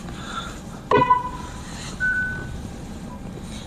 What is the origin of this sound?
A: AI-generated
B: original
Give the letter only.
B